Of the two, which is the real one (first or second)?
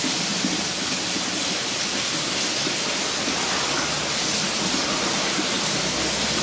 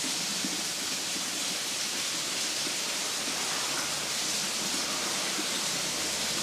first